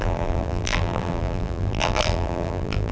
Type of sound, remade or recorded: remade